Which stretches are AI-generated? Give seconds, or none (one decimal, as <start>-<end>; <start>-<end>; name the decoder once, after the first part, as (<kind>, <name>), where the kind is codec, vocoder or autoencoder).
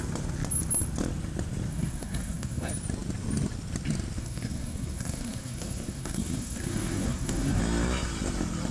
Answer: 1.7-2.7 (codec, SNAC); 4.2-7.6